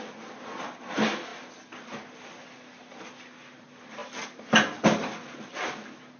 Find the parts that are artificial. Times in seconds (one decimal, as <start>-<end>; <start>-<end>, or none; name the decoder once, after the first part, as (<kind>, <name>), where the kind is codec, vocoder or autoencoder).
none